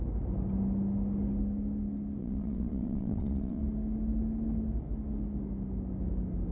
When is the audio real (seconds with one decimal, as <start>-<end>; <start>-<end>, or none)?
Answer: 0.0-2.2; 3.6-6.5